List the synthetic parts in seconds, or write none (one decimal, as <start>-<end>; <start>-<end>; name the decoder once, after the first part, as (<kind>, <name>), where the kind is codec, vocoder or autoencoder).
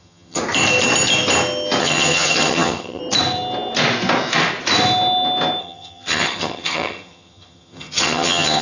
0.0-0.4 (vocoder, HiFi-GAN); 1.8-3.0; 5.6-8.6